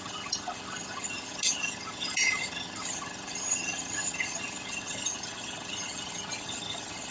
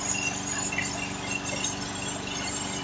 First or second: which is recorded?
second